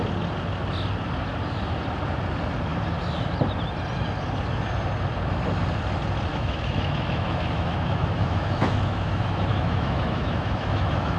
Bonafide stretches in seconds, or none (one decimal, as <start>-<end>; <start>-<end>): 0.0-6.3